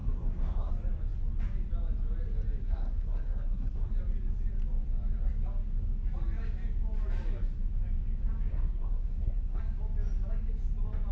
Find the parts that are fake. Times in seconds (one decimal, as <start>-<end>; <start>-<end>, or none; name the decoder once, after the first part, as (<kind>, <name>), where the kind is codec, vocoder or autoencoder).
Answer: 0.0-0.7 (codec, SNAC); 2.6-3.9; 8.5-9.6